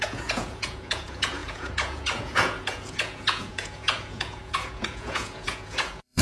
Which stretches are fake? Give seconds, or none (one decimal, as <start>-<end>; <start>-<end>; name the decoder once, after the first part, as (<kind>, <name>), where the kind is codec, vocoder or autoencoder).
0.0-6.2 (vocoder, Vocos)